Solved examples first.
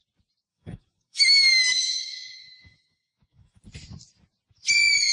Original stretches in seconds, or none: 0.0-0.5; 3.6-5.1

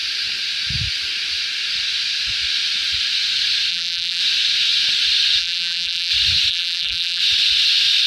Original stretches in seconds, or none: 0.0-3.7; 4.2-5.4; 6.1-6.5; 7.2-8.1